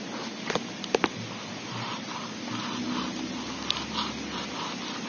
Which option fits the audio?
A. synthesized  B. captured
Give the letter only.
B